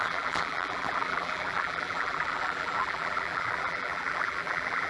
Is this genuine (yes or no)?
no